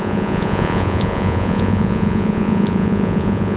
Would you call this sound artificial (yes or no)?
yes